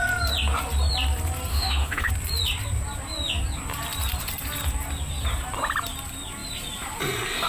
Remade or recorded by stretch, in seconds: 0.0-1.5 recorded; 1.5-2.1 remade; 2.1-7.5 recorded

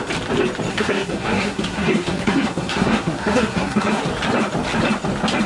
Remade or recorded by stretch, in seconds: 0.0-0.7 recorded; 0.7-4.0 remade; 4.0-5.5 recorded

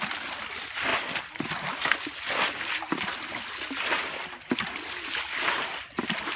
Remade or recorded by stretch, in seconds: 0.0-6.4 recorded